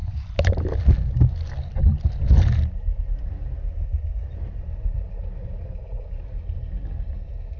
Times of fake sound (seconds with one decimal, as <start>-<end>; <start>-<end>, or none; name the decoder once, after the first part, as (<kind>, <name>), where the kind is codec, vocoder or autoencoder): 0.0-0.8 (vocoder, BigVGAN v2)